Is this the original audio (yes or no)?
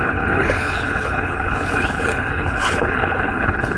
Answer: no